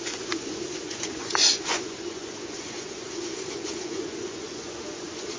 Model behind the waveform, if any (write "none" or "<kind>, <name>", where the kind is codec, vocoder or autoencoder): vocoder, Vocos